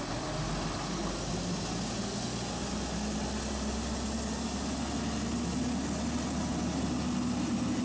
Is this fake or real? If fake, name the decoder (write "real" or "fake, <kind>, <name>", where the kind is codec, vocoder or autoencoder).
real